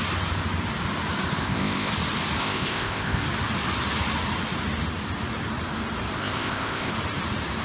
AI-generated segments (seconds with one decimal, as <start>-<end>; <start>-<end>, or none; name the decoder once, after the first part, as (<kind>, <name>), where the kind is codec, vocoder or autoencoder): 1.4-1.9 (codec, ZipCodec); 2.4-3.2; 6.2-6.9